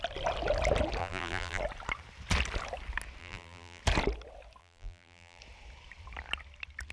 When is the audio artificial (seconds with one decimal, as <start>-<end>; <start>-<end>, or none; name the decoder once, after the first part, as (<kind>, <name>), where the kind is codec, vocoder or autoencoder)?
1.0-1.6 (vocoder, BigVGAN v2); 3.2-3.8; 4.6-5.4